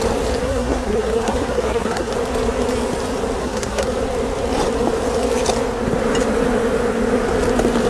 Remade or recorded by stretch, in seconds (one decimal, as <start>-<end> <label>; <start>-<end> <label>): 0.0-0.4 recorded; 0.4-2.1 remade; 2.1-3.4 recorded; 3.4-3.9 remade; 3.9-7.9 recorded